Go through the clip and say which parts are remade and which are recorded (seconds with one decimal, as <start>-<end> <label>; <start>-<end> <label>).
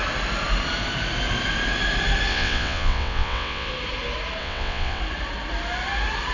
0.0-2.3 recorded; 2.3-3.7 remade; 3.7-4.4 recorded; 4.4-5.0 remade; 5.0-6.3 recorded